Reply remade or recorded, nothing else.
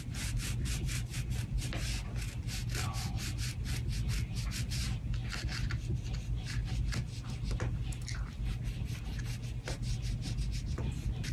recorded